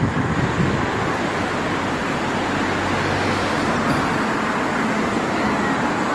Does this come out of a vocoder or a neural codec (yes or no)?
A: no